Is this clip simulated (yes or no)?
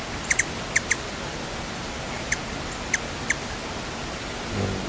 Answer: no